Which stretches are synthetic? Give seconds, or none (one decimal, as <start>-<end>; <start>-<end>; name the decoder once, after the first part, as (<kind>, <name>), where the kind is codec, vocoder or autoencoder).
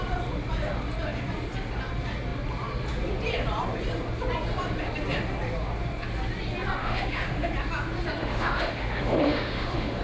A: 6.8-7.5 (autoencoder, DAC-VAE); 8.2-10.0